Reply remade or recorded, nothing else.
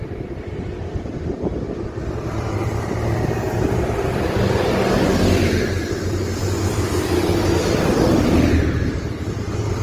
remade